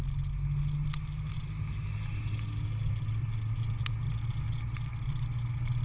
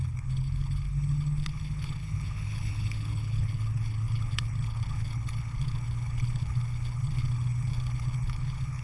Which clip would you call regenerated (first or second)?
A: second